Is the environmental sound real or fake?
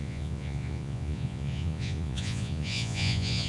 fake